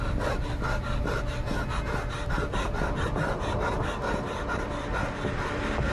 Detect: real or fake real